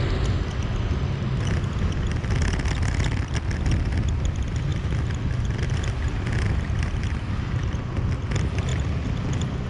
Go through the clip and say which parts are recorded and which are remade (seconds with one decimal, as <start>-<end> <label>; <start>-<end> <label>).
0.0-4.7 recorded; 4.7-5.3 remade; 5.3-8.7 recorded; 8.7-9.7 remade